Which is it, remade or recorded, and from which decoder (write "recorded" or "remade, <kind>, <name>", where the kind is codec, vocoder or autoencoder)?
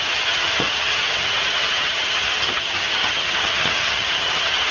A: remade, vocoder, HiFi-GAN